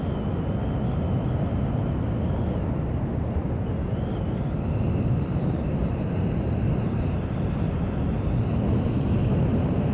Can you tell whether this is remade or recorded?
recorded